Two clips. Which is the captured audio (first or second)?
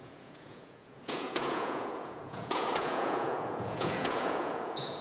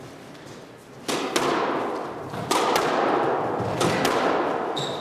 second